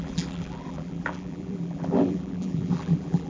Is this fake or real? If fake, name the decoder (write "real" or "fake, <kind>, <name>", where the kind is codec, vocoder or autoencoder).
fake, vocoder, BigVGAN v2